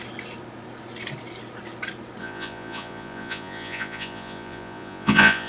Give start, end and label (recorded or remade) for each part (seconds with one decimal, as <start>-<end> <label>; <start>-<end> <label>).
0.0-2.2 recorded; 2.2-5.5 remade

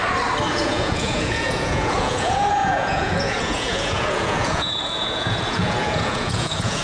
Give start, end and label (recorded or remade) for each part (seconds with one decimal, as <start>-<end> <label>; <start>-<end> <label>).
0.0-0.5 recorded; 0.5-6.8 remade

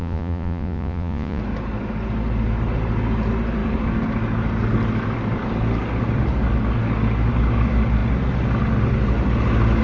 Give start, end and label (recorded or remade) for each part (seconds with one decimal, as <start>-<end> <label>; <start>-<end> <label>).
0.0-1.4 remade; 1.4-9.8 recorded

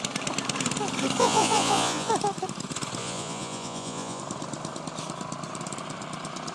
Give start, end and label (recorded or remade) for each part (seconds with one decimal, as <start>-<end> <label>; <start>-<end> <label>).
0.0-1.2 recorded; 1.2-2.1 remade; 2.1-3.0 recorded; 3.0-4.2 remade; 4.2-6.5 recorded

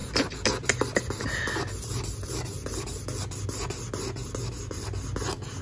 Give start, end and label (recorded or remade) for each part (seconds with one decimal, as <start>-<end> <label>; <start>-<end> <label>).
0.0-5.6 recorded

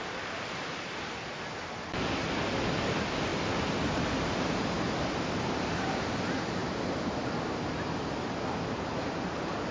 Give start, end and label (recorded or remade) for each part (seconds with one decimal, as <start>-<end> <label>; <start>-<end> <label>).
0.0-9.7 recorded